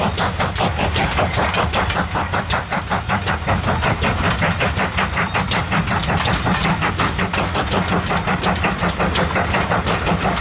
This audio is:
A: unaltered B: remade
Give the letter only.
A